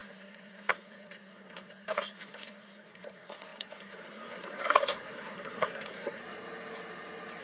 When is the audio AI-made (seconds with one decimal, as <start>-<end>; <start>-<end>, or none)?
0.0-6.2